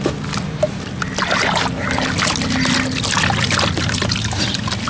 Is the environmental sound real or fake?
real